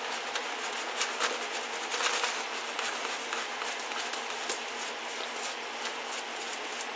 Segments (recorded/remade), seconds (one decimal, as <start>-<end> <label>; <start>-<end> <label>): 0.0-0.4 recorded; 0.4-1.0 remade; 1.0-7.0 recorded